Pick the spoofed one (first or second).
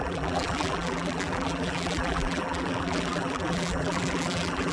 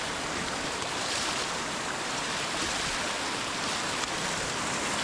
first